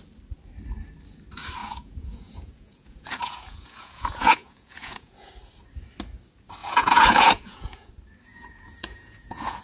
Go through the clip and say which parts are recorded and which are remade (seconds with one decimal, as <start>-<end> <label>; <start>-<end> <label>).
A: 0.0-1.6 recorded; 1.6-5.3 remade; 5.3-6.6 recorded; 6.6-7.9 remade; 7.9-8.3 recorded; 8.3-9.6 remade